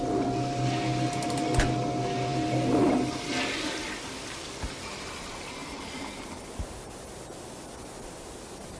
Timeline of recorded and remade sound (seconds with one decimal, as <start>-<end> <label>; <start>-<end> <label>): 0.0-8.8 recorded